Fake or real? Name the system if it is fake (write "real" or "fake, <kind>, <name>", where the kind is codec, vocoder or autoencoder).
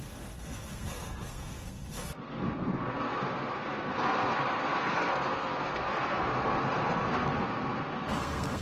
fake, codec, SNAC